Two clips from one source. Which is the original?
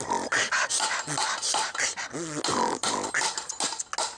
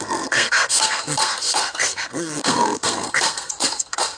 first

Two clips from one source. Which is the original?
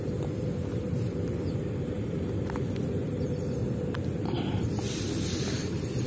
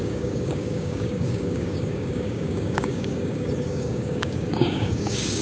first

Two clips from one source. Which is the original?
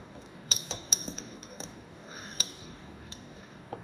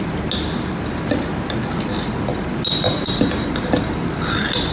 second